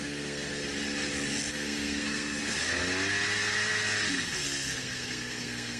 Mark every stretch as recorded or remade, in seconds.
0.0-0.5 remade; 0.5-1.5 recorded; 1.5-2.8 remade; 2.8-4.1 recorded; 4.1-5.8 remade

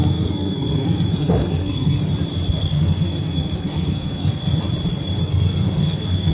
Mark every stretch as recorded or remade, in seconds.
0.0-2.0 remade; 2.0-2.6 recorded; 2.6-4.6 remade; 4.6-5.2 recorded; 5.2-6.3 remade

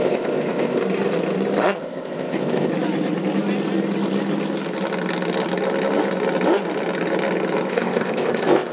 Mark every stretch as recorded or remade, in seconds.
0.0-0.8 remade; 0.8-1.8 recorded; 1.8-2.7 remade; 2.7-7.7 recorded; 7.7-8.7 remade

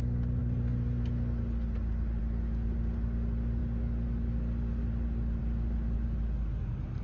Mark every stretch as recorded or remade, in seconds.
0.0-7.0 recorded

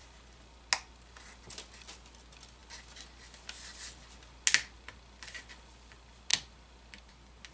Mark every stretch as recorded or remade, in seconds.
0.0-7.5 recorded